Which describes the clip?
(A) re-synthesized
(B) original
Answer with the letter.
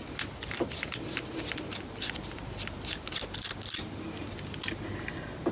B